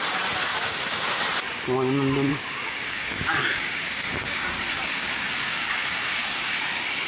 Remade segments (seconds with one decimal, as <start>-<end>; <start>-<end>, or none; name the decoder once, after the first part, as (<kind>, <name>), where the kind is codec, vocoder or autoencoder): 0.5-1.2 (codec, DAC); 2.3-6.6